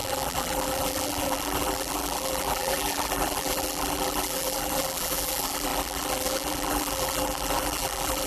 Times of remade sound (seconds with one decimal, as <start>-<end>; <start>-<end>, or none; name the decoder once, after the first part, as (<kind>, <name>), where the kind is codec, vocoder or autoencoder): 0.0-8.3 (vocoder, BigVGAN v2)